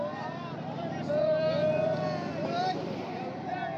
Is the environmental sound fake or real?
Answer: fake